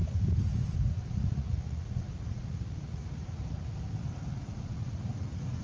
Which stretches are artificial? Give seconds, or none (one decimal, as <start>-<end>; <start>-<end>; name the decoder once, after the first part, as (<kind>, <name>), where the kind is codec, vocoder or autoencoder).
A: 1.0-3.0 (vocoder, Vocos); 4.3-5.6